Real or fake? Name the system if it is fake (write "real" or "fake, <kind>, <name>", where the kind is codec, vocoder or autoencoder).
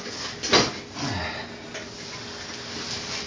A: real